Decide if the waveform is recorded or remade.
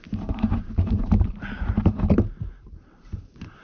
remade